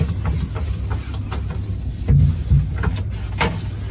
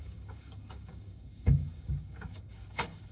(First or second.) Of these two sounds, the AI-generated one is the second